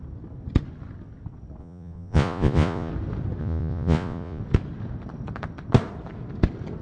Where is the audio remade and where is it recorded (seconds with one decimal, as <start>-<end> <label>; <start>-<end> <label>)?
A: 0.0-1.6 recorded; 1.6-2.9 remade; 2.9-3.4 recorded; 3.4-4.4 remade; 4.4-6.8 recorded